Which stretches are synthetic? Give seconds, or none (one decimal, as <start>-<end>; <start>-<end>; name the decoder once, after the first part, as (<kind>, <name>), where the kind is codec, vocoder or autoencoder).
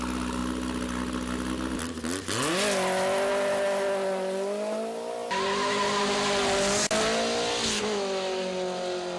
none